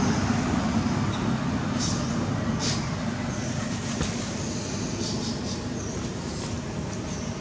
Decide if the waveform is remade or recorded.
recorded